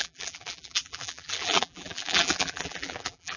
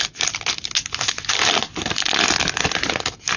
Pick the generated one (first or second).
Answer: first